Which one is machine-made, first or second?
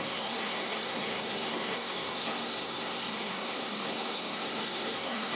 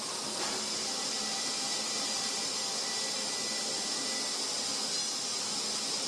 first